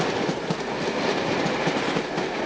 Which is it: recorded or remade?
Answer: recorded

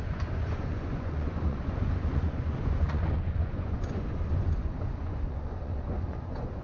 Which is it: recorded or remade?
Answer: remade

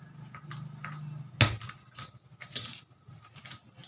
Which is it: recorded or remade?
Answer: recorded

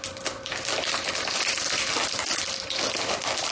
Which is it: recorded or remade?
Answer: recorded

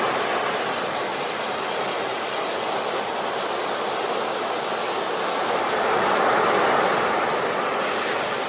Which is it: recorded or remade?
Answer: recorded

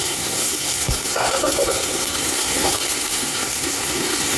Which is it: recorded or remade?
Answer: remade